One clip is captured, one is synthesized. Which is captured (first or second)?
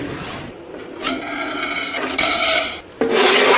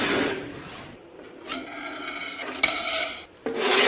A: first